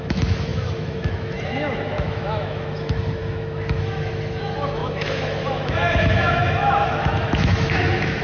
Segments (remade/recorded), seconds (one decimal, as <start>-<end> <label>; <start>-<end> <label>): 0.0-8.2 remade